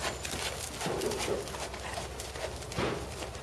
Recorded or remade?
recorded